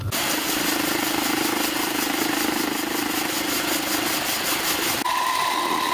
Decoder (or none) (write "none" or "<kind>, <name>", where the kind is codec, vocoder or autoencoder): none